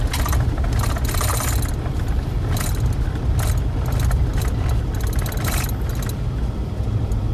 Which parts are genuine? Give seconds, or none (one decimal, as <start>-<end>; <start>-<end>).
0.0-7.3